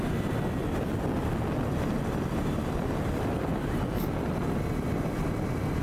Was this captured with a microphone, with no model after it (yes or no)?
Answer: yes